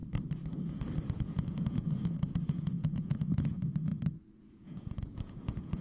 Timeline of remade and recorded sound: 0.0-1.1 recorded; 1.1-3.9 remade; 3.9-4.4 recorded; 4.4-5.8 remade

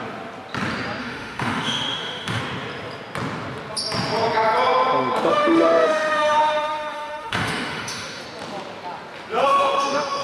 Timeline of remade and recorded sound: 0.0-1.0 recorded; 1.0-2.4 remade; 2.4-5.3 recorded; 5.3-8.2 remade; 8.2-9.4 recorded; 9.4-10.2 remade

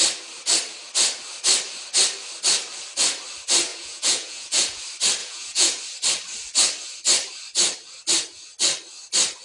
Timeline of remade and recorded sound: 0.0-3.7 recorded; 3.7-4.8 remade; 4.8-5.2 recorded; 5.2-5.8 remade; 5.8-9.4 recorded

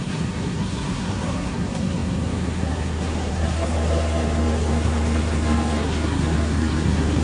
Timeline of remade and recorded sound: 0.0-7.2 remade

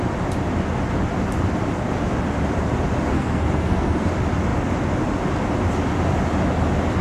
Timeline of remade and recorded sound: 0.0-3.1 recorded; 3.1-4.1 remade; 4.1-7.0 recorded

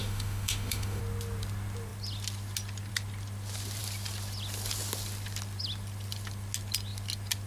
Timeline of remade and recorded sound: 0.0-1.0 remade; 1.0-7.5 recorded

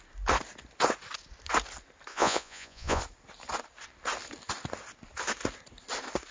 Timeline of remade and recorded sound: 0.0-2.1 recorded; 2.1-3.0 remade; 3.0-6.3 recorded